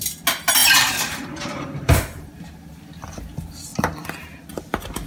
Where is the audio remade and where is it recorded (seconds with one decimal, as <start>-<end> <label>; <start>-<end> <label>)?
0.0-0.6 recorded; 0.6-3.0 remade; 3.0-5.1 recorded